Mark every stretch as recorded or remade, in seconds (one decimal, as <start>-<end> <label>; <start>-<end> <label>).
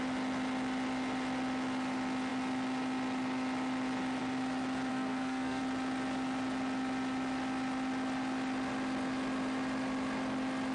0.0-4.9 recorded; 4.9-5.6 remade; 5.6-10.7 recorded